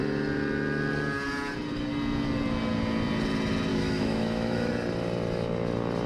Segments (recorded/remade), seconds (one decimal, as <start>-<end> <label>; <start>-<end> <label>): 0.0-3.7 recorded; 3.7-4.7 remade; 4.7-6.1 recorded